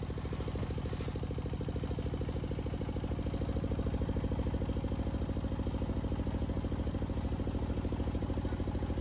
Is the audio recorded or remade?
recorded